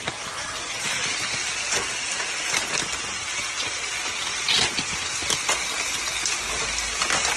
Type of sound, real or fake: real